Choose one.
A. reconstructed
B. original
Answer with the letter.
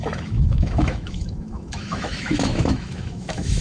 A